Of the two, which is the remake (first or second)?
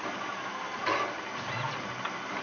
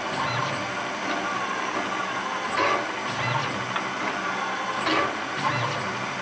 first